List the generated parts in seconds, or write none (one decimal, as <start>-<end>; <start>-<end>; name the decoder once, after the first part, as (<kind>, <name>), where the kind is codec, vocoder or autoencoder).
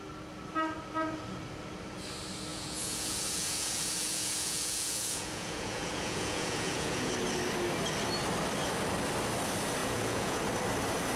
2.5-7.1 (vocoder, Vocos); 9.8-10.4